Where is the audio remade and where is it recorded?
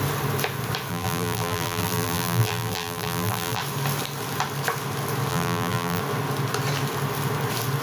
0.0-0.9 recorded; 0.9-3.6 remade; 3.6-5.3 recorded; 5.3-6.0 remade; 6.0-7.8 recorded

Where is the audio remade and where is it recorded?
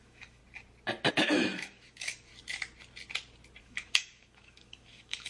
0.0-0.4 remade; 0.4-1.1 recorded; 1.1-2.3 remade; 2.3-3.6 recorded; 3.6-5.3 remade